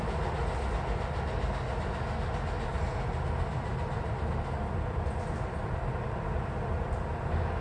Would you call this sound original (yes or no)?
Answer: yes